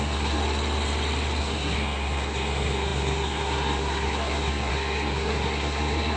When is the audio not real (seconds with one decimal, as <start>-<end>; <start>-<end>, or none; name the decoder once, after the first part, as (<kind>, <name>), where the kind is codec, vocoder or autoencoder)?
0.0-0.4 (codec, SNAC); 1.4-6.2